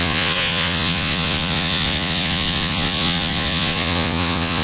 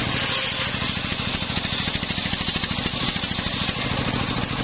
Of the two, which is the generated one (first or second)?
first